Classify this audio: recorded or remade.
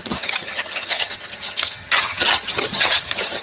remade